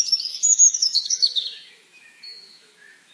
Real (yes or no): no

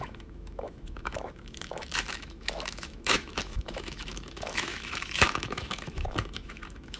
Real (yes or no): no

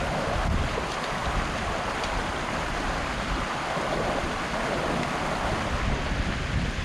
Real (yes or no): yes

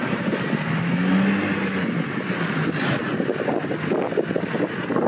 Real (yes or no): yes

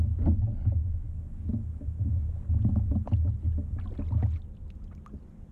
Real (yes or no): yes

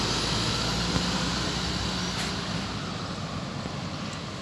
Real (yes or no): yes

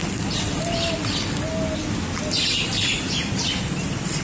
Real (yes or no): yes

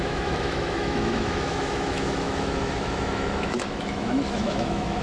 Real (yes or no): no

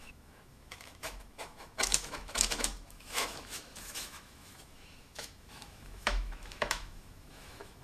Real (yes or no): no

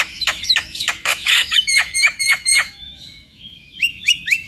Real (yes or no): no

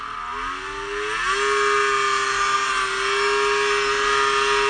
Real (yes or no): yes